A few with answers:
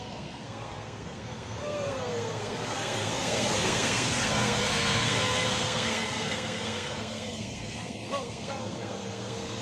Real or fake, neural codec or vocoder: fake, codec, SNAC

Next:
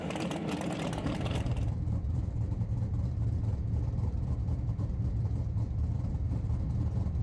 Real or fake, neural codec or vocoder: fake, vocoder, BigVGAN v2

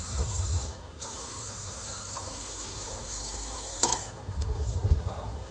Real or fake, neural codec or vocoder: fake, codec, SNAC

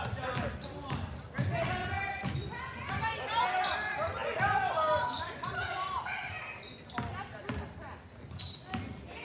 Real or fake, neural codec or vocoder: real